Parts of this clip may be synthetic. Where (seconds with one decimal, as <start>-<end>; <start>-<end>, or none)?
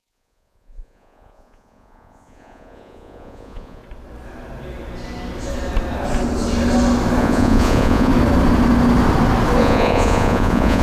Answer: 0.0-3.8; 7.2-8.1; 9.6-10.8